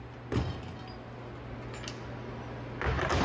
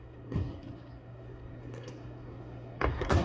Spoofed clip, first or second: second